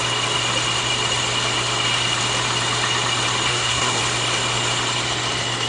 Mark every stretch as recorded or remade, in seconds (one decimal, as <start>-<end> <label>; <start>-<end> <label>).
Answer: 0.0-3.5 recorded; 3.5-4.0 remade; 4.0-5.7 recorded